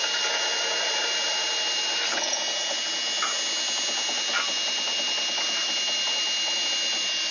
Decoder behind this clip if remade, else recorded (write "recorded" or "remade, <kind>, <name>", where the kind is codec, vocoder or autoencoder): recorded